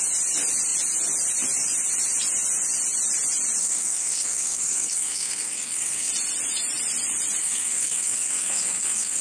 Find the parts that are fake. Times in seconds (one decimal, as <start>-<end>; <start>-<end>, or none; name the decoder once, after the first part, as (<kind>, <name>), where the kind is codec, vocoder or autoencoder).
3.6-6.1 (codec, SNAC); 7.4-9.2